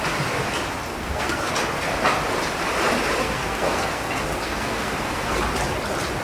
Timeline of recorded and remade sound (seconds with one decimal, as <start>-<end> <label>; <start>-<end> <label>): 0.0-0.9 recorded; 0.9-1.5 remade; 1.5-3.2 recorded; 3.2-5.4 remade; 5.4-6.2 recorded